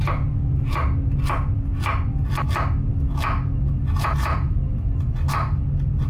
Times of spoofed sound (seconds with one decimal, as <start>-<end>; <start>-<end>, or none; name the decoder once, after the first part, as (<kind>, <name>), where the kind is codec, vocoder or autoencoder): 0.0-0.8 (vocoder, Vocos); 4.0-4.6